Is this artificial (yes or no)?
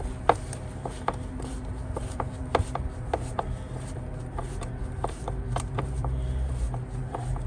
yes